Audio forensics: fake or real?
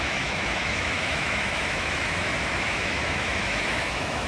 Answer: fake